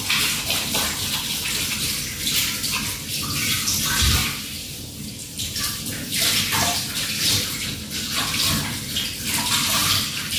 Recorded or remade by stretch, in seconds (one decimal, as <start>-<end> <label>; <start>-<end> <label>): 0.0-4.2 recorded; 4.2-4.8 remade; 4.8-5.2 recorded; 5.2-5.8 remade; 5.8-9.8 recorded; 9.8-10.4 remade